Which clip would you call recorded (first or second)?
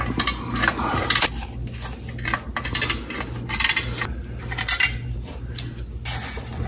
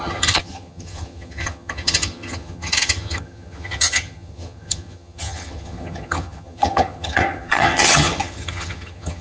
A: first